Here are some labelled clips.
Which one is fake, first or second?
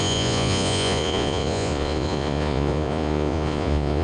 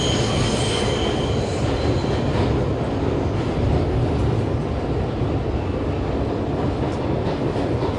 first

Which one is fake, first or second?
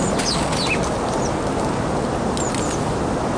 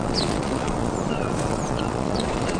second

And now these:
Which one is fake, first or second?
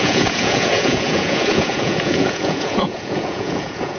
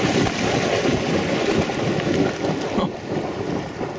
first